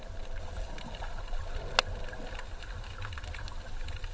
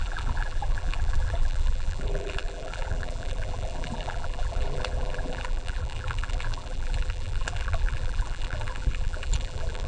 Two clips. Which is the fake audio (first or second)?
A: second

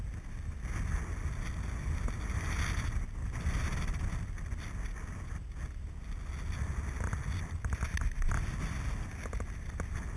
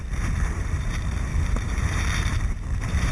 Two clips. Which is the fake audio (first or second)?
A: second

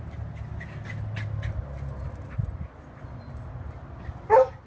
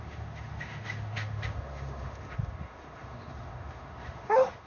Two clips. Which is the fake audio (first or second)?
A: second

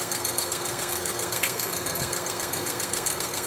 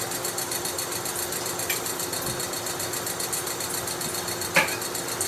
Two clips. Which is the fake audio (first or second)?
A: first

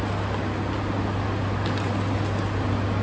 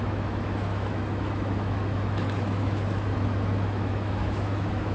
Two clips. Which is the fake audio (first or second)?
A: second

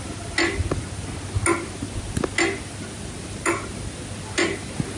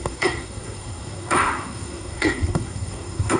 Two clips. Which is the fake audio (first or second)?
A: second